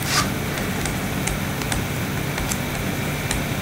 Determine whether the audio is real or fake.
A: real